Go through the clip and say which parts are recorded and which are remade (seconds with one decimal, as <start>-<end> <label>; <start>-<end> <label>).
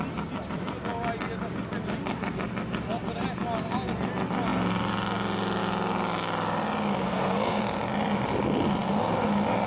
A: 0.0-7.0 recorded; 7.0-7.6 remade; 7.6-9.7 recorded